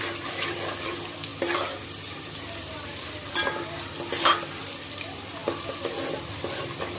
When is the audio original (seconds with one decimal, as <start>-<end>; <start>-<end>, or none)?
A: 5.4-7.0